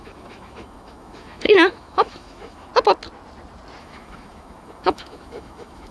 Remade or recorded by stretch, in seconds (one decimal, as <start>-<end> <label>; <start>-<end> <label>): 0.0-2.7 remade; 2.7-3.8 recorded; 3.8-5.9 remade